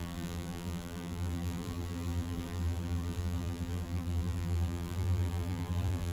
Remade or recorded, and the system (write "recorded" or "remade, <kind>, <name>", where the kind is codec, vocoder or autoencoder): remade, vocoder, BigVGAN v2